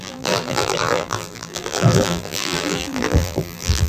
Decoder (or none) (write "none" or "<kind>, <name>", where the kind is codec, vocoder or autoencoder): vocoder, BigVGAN v2